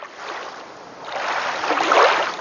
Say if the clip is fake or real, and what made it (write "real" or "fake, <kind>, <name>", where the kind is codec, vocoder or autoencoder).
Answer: real